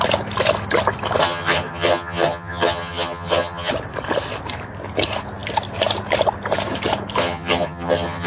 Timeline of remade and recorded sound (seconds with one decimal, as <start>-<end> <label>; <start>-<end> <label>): 0.0-1.2 recorded; 1.2-3.7 remade; 3.7-7.2 recorded; 7.2-8.3 remade